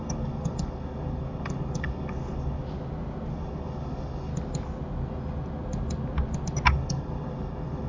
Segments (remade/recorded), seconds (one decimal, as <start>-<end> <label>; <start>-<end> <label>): 0.0-2.6 remade; 2.6-3.3 recorded; 3.3-4.3 remade; 4.3-6.7 recorded; 6.7-7.9 remade